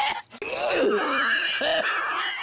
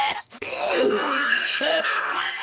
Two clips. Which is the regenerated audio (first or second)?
second